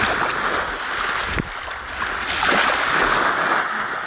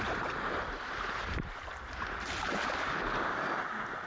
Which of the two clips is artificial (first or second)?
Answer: second